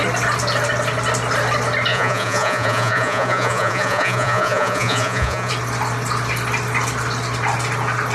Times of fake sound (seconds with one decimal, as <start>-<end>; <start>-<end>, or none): 1.9-5.5

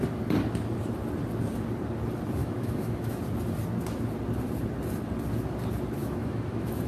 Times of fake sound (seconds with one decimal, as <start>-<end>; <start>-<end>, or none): 2.4-3.2; 6.0-6.9